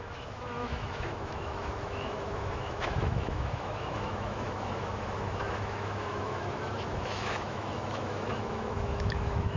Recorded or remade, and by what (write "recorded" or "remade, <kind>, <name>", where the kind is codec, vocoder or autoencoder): remade, autoencoder, DAC-VAE